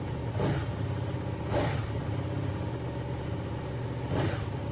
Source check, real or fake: real